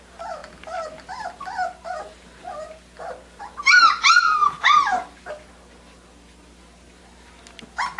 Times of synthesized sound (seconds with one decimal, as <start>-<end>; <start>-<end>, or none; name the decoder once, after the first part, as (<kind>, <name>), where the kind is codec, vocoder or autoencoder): none